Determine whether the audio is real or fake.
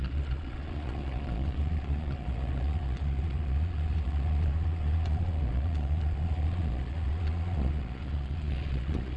fake